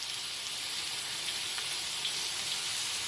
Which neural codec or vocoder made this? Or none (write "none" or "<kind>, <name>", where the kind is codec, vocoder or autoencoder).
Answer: none